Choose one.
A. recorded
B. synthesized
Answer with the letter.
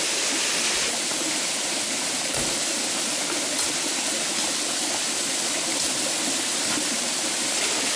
B